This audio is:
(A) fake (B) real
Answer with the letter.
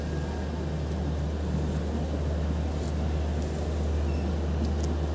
B